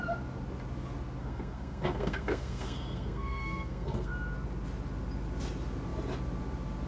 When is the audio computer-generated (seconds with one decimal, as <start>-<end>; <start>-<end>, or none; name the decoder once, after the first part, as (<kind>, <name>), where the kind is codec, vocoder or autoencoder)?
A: 1.2-4.1 (codec, SNAC)